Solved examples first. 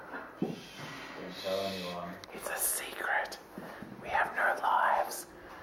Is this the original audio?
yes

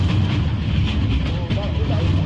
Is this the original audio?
yes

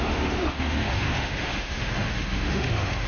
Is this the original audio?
no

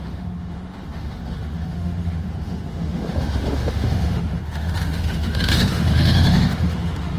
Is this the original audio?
no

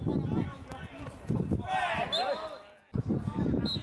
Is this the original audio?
yes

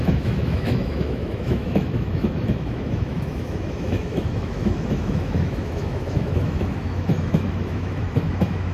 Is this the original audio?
no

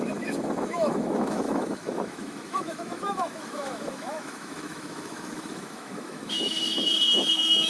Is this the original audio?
no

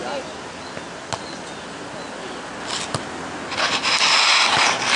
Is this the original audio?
yes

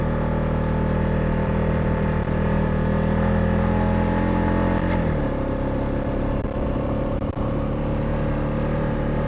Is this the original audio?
yes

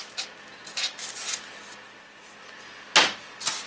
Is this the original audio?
yes